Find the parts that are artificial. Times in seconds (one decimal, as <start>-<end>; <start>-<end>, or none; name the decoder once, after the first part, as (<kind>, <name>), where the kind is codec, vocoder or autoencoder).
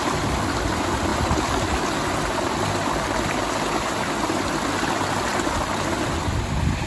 none